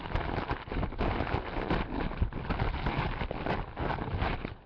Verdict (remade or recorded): recorded